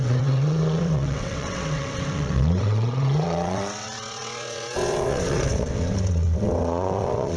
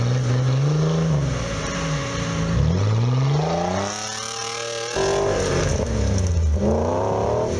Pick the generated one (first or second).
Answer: first